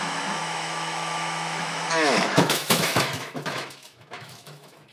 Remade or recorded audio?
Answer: remade